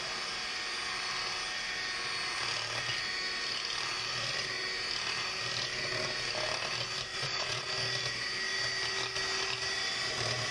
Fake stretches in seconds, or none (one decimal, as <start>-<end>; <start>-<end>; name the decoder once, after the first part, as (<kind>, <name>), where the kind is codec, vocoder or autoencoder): 7.1-7.7 (vocoder, Vocos)